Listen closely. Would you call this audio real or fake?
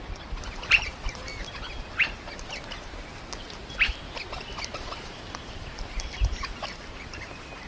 real